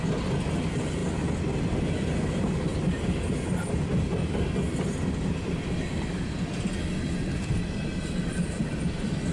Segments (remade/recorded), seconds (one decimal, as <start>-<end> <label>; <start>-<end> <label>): 0.0-9.3 recorded